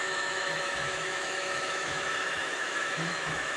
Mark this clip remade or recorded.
remade